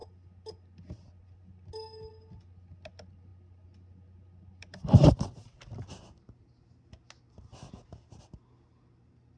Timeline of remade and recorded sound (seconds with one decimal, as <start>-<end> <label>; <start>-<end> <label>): 0.0-9.4 recorded